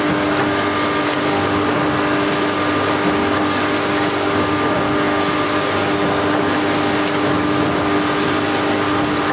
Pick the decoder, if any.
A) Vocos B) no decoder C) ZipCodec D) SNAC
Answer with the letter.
B